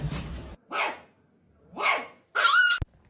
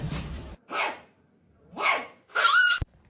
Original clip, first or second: first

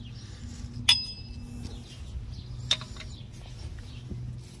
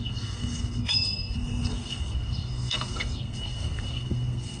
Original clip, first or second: first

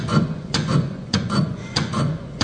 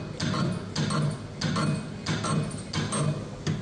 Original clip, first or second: second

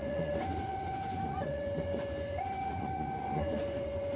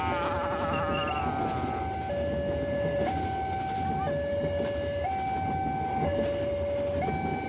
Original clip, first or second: second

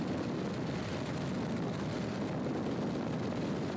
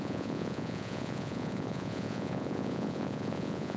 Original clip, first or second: first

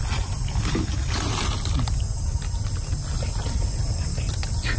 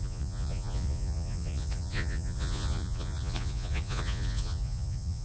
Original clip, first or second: first